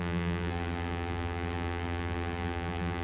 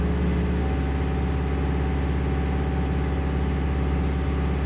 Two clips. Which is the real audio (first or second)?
second